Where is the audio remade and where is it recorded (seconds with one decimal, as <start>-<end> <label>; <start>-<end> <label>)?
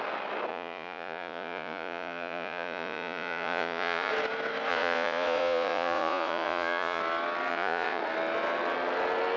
0.0-0.5 recorded; 0.5-4.1 remade; 4.1-4.7 recorded; 4.7-7.0 remade; 7.0-7.5 recorded; 7.5-8.0 remade; 8.0-9.4 recorded